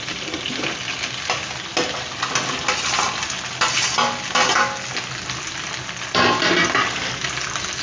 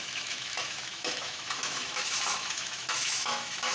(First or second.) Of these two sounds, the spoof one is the second